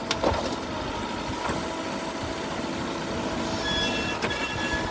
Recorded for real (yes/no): yes